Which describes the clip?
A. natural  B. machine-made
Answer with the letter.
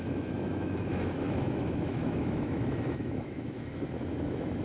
B